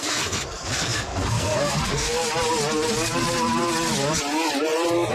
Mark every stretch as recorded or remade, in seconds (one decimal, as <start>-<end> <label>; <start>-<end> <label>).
0.0-2.2 remade; 2.2-5.1 recorded